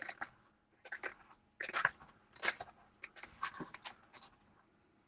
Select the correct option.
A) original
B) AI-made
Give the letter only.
A